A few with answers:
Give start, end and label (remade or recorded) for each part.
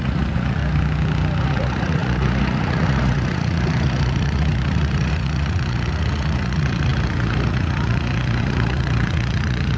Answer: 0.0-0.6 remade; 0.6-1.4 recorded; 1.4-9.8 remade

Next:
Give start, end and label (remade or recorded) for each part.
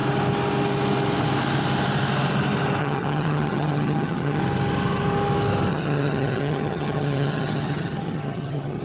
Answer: 0.0-2.8 recorded; 2.8-4.4 remade; 4.4-5.7 recorded; 5.7-8.8 remade